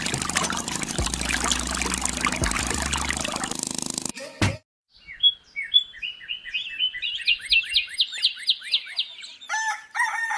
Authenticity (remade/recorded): recorded